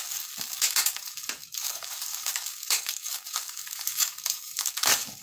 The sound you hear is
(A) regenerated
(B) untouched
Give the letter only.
A